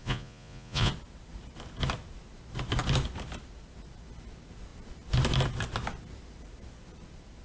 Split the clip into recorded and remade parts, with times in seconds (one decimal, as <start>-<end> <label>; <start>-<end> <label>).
0.0-0.9 remade; 0.9-7.4 recorded